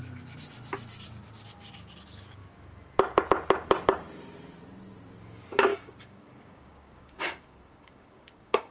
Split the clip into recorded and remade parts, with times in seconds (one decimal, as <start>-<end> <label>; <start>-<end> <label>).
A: 0.0-5.7 recorded; 5.7-8.7 remade